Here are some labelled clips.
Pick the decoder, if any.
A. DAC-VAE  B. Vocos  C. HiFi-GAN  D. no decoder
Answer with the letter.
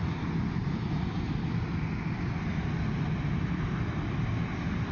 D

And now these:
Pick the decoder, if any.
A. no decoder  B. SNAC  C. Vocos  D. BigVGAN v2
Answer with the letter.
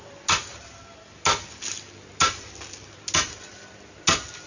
A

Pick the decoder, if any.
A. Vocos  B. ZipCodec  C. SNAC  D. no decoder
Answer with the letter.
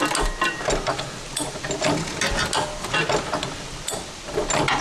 D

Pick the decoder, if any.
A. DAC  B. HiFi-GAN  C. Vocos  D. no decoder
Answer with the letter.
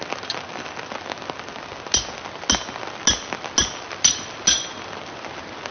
D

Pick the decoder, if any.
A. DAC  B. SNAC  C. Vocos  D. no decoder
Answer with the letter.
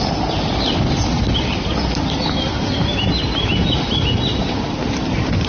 D